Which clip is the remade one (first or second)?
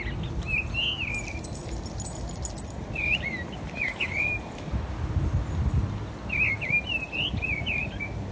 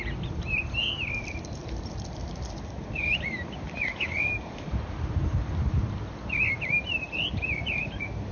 second